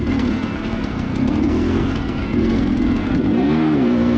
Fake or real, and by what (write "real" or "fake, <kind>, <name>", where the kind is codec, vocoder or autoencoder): fake, codec, SNAC